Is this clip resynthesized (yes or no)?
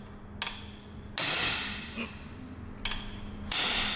no